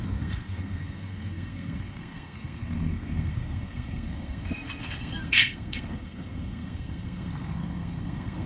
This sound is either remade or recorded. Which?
remade